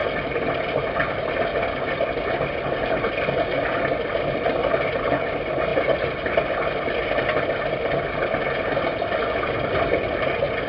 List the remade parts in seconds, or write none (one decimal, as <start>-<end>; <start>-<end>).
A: none